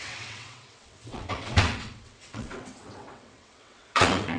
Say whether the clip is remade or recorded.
remade